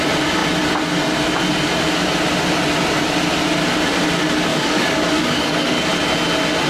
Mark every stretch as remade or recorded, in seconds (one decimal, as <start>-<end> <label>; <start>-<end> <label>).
0.0-4.5 recorded; 4.5-5.9 remade; 5.9-6.7 recorded